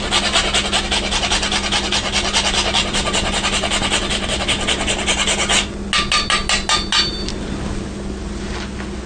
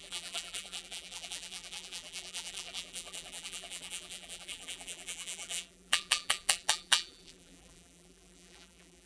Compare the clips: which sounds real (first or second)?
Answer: first